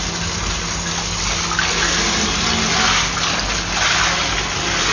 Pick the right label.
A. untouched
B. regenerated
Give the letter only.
A